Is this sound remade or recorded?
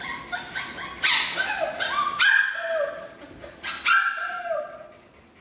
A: recorded